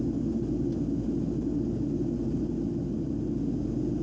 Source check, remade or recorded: recorded